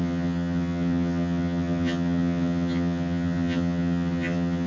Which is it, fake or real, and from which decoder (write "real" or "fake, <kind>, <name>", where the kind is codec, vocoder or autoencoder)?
fake, vocoder, HiFi-GAN